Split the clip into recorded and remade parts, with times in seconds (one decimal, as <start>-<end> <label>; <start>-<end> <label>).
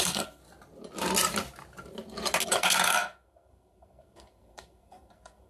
0.0-0.4 remade; 0.4-2.5 recorded; 2.5-5.5 remade